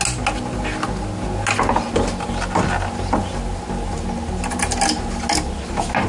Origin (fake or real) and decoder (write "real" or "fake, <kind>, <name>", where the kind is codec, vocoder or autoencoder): real